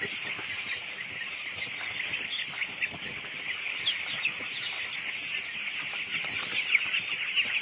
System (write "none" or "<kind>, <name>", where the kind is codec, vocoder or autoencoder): none